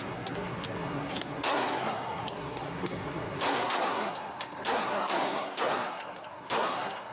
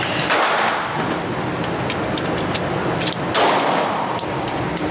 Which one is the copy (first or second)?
first